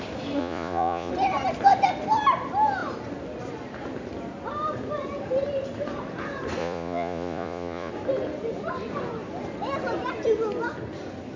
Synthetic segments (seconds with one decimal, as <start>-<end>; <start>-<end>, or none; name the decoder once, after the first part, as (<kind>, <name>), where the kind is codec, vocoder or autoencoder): 0.4-1.1 (vocoder, Vocos); 6.6-7.9